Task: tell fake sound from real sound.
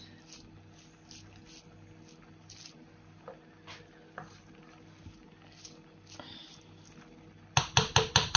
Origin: real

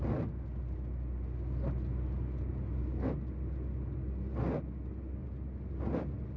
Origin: real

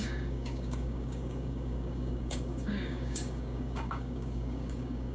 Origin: fake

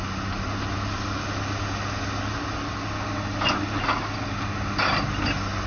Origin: real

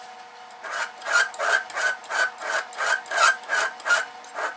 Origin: real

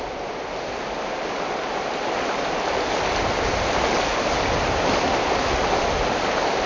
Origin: real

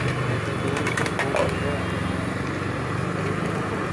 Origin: real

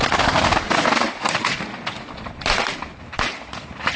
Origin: real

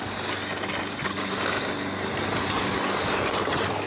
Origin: real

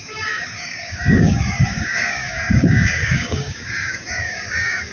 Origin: fake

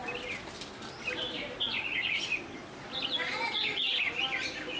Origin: real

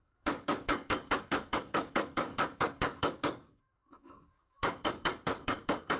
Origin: fake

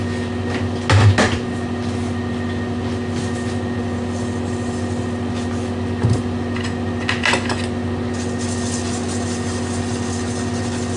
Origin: real